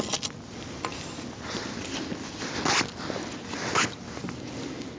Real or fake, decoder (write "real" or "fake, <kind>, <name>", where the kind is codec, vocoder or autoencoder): real